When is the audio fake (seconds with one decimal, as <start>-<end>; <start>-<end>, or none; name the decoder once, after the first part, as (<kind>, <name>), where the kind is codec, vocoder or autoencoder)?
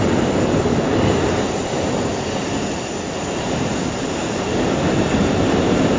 0.0-2.1 (vocoder, BigVGAN v2); 5.2-6.0